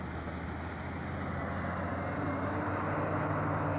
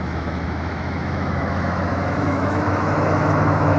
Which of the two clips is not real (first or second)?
second